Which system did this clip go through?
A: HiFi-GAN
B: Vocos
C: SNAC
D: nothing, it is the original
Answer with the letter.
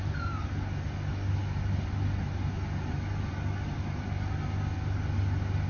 D